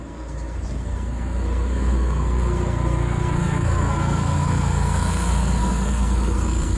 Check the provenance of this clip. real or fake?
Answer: fake